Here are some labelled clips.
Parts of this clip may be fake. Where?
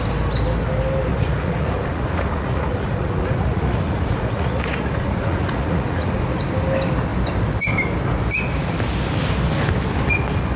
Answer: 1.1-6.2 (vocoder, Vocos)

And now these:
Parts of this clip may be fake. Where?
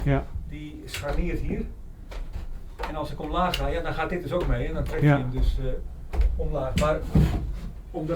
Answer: 1.9-2.9 (vocoder, Vocos)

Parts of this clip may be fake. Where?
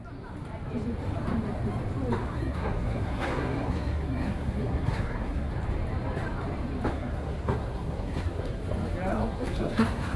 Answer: 2.2-5.5 (codec, SNAC); 6.9-8.6; 9.1-10.2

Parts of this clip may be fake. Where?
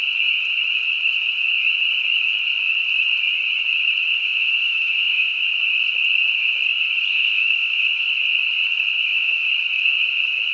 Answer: 4.1-5.4 (autoencoder, DAC-VAE); 7.1-8.0; 9.0-9.5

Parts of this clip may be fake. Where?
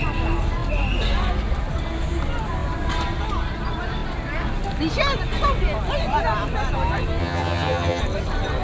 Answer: 7.2-8.0 (vocoder, HiFi-GAN)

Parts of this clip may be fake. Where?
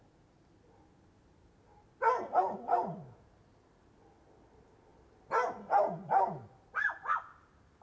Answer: none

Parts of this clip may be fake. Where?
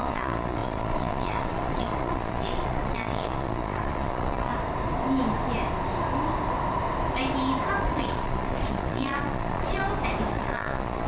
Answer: 0.0-4.5 (vocoder, Vocos); 7.8-9.8; 10.3-11.1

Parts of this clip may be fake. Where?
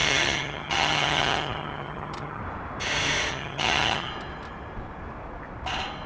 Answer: 0.0-2.4 (vocoder, HiFi-GAN); 3.3-4.1